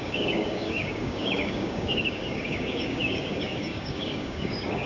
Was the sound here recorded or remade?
remade